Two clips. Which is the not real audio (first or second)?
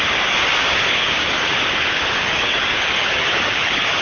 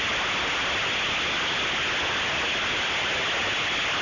first